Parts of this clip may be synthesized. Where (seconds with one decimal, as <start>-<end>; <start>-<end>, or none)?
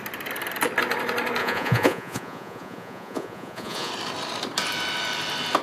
1.4-3.9